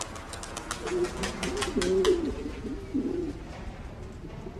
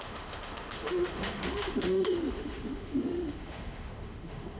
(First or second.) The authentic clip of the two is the first